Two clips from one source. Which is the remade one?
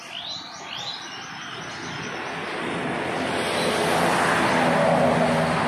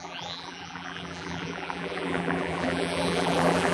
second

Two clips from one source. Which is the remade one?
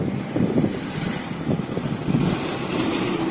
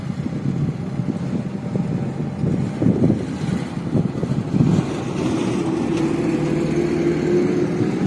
first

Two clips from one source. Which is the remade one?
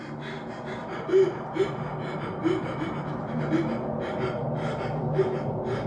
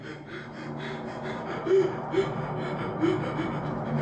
first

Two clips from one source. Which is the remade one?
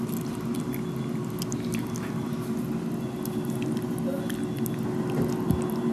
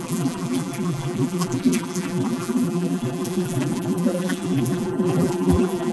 second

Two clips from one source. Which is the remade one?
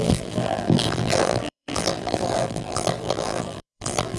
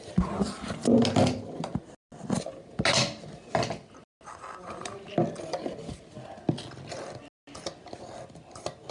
first